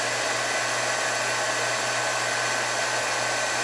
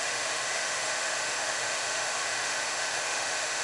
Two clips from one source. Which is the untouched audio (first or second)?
first